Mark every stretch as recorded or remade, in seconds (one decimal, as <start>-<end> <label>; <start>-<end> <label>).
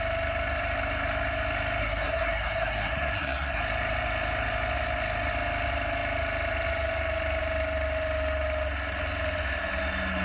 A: 0.0-1.8 recorded; 1.8-3.6 remade; 3.6-10.2 recorded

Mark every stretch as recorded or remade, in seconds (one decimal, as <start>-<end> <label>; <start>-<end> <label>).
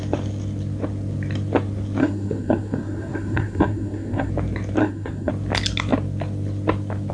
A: 0.0-2.0 recorded; 2.0-4.3 remade; 4.3-4.8 recorded; 4.8-5.3 remade; 5.3-7.1 recorded